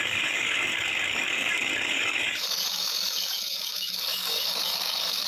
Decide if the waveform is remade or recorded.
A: remade